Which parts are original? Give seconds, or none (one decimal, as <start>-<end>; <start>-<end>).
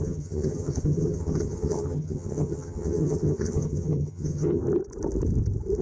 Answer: 4.6-5.8